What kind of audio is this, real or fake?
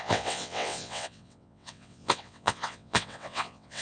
fake